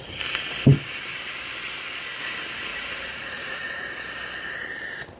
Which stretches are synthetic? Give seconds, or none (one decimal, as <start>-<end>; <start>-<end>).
2.7-3.9